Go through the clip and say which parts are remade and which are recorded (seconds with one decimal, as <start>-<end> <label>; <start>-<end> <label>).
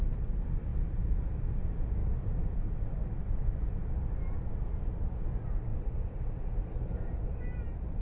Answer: 0.0-8.0 recorded